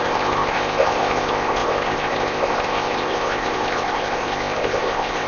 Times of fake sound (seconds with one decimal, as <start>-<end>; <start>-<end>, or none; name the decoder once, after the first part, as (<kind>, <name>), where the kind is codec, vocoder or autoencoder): 0.0-5.3 (codec, ZipCodec)